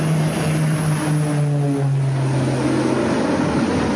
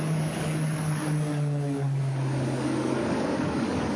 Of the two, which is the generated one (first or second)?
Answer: second